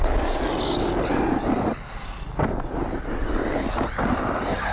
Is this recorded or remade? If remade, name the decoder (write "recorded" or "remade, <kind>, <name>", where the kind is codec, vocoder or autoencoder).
recorded